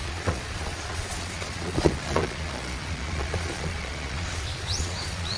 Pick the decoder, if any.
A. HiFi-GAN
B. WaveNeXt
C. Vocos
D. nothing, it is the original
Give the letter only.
C